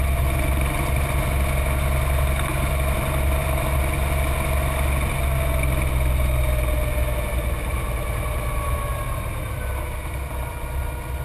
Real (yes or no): yes